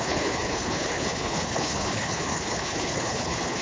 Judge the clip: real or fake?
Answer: fake